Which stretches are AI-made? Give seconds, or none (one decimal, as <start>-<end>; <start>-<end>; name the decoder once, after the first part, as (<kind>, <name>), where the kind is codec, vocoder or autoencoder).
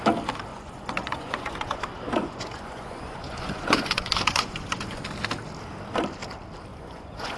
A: 0.5-1.8 (vocoder, Vocos); 2.2-5.0; 6.7-7.4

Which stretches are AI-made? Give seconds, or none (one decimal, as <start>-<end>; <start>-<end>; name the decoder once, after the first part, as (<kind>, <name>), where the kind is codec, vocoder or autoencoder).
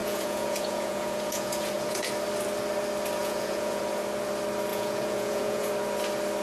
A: 0.0-2.1 (vocoder, Vocos); 3.2-3.8; 4.7-5.7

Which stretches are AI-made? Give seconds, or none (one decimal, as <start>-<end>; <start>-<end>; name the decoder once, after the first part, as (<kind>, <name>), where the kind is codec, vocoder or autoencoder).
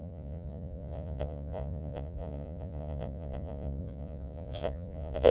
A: 0.0-5.3 (vocoder, Vocos)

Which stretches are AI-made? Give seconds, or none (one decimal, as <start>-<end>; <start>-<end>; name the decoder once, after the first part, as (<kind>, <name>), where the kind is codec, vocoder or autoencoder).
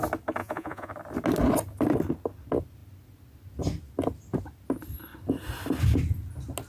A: 0.4-0.9 (vocoder, Vocos)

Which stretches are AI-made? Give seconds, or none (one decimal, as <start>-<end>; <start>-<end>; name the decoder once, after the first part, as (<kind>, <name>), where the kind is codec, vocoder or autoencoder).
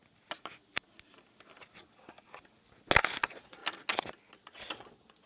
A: 3.2-3.6 (vocoder, Vocos); 4.3-5.3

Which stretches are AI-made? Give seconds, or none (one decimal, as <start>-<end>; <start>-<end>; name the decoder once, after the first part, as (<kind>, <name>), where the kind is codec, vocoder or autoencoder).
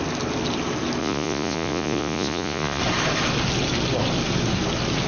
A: 1.0-2.8 (vocoder, Vocos)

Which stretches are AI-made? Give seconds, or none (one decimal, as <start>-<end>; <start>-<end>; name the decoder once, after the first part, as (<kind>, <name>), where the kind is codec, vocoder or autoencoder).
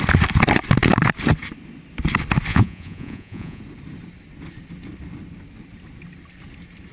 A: 2.5-3.6 (vocoder, Vocos)